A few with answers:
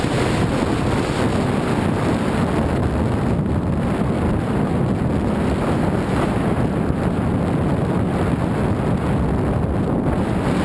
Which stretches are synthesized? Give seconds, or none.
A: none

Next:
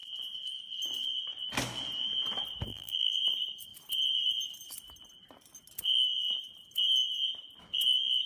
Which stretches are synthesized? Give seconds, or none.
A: 2.7-3.2 (vocoder, BigVGAN v2)